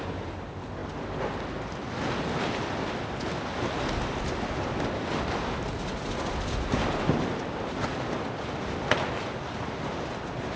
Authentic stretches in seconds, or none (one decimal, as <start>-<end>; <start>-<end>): 0.0-10.6